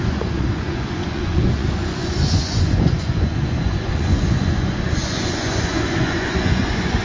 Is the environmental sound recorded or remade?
remade